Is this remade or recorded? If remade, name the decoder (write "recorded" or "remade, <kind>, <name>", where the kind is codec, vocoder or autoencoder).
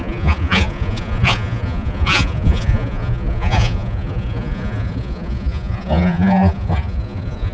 remade, vocoder, Vocos